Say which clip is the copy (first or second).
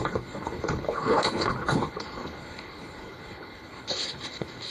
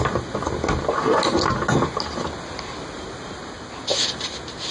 first